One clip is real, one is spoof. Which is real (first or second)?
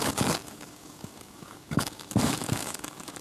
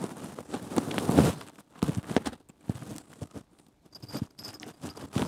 second